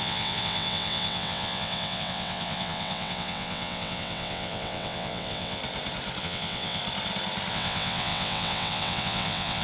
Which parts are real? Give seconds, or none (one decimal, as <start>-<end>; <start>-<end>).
5.6-6.2; 6.8-7.5